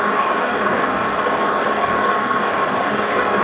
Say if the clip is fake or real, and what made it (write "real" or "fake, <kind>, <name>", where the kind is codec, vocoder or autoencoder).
fake, codec, DAC